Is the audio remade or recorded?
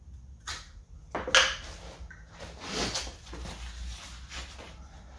recorded